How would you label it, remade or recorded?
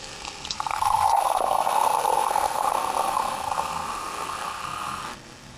remade